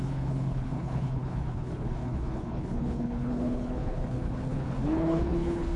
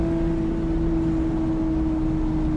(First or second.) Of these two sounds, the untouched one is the second